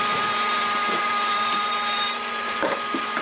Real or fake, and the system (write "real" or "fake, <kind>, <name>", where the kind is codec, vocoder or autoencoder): fake, vocoder, BigVGAN v2